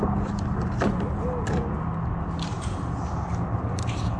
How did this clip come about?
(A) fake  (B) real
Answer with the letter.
B